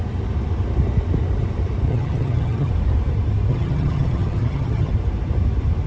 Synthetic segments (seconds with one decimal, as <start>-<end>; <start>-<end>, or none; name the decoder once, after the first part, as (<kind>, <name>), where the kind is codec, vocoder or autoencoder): 1.9-2.7 (vocoder, HiFi-GAN); 3.5-4.9